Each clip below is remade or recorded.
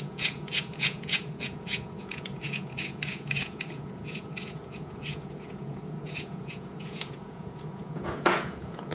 remade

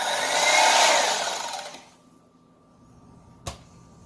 recorded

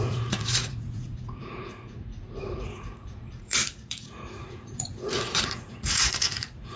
remade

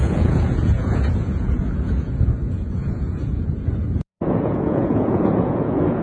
remade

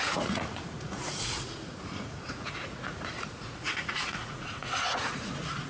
remade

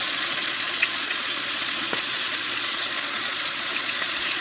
remade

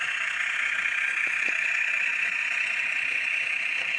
remade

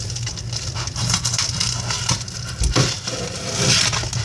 recorded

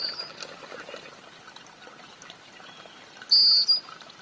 recorded